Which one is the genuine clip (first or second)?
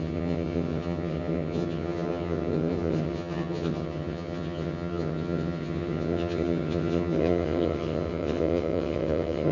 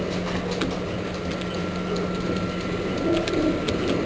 second